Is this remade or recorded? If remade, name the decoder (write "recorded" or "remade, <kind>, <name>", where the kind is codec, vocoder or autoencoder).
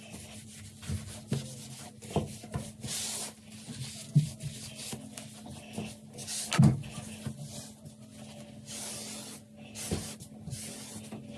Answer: recorded